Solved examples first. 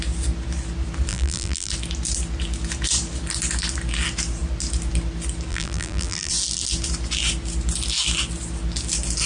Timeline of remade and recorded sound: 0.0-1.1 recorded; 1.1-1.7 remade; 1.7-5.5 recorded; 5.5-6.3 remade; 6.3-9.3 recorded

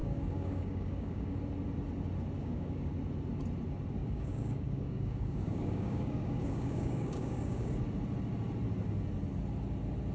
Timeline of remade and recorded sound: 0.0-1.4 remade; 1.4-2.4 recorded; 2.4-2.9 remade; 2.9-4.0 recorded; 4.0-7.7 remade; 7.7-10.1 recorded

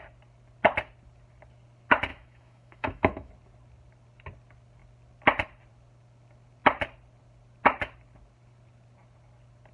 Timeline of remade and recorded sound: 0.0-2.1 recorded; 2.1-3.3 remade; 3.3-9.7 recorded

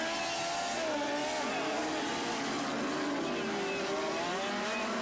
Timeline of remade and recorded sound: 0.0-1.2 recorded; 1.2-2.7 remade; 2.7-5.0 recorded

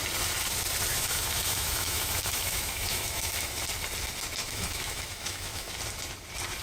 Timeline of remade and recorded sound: 0.0-0.9 recorded; 0.9-3.6 remade; 3.6-4.4 recorded; 4.4-5.7 remade; 5.7-6.6 recorded